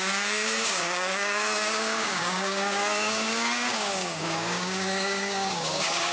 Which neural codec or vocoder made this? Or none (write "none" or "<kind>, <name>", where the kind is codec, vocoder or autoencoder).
codec, DAC